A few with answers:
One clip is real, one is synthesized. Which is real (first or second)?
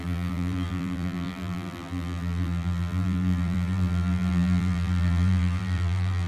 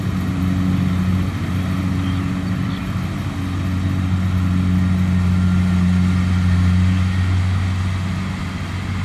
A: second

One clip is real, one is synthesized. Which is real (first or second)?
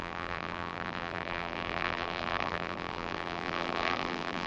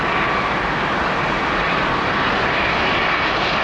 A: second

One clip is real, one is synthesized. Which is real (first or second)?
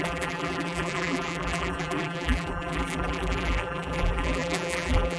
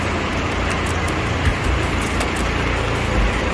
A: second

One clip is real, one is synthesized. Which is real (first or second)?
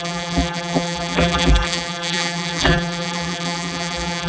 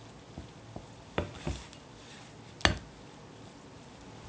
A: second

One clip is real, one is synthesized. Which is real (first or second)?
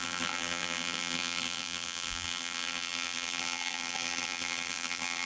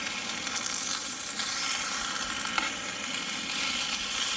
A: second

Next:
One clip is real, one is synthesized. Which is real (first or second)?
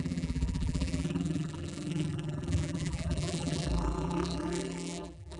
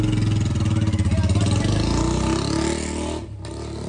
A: second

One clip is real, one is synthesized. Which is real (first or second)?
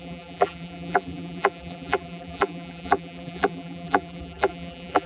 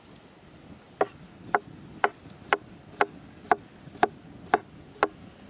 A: second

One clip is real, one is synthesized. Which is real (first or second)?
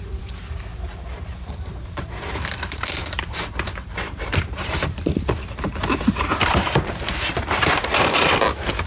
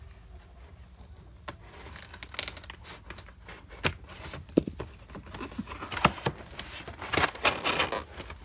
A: second